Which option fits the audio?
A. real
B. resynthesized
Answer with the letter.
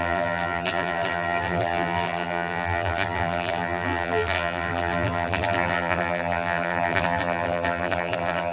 B